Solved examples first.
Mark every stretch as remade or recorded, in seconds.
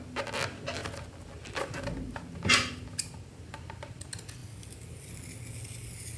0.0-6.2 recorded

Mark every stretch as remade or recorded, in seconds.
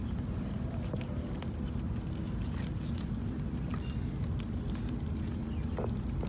0.0-6.3 recorded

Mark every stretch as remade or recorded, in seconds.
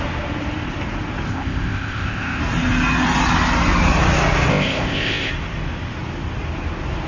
0.0-1.3 recorded; 1.3-2.4 remade; 2.4-4.5 recorded; 4.5-5.3 remade; 5.3-7.1 recorded